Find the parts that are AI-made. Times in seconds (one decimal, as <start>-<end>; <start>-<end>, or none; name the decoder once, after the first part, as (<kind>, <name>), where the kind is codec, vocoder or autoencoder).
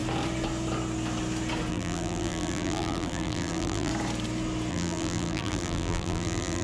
1.7-3.9 (vocoder, BigVGAN v2); 4.7-6.6